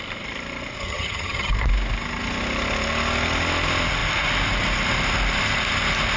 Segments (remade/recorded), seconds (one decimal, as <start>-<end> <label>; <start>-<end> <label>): 0.0-0.8 recorded; 0.8-1.5 remade; 1.5-6.2 recorded